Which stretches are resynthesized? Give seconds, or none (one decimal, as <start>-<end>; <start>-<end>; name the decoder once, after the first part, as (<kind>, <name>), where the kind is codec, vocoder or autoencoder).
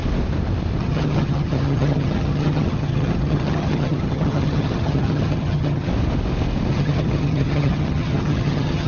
0.8-5.9 (vocoder, HiFi-GAN); 6.7-8.9